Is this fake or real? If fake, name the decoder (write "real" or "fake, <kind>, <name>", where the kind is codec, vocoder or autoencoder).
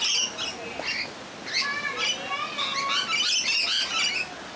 real